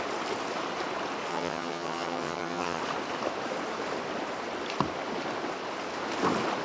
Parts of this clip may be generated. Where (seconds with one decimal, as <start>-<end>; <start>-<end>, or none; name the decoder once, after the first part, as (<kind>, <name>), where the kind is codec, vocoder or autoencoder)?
1.3-2.8 (vocoder, HiFi-GAN)